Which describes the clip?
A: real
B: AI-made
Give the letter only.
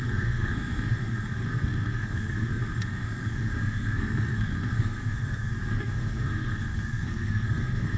B